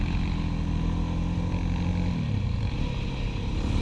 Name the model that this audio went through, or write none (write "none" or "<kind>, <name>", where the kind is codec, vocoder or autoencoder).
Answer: none